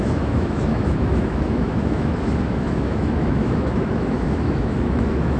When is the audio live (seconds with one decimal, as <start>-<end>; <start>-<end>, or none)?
none